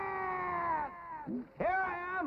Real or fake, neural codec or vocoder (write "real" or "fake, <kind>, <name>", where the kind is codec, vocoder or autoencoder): real